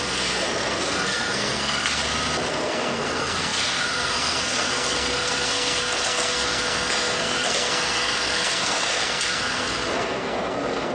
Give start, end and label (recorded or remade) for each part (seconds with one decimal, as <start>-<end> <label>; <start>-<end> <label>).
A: 0.0-2.0 remade; 2.0-2.5 recorded; 2.5-10.9 remade